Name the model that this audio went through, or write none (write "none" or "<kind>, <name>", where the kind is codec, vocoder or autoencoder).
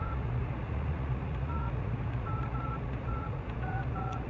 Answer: vocoder, Vocos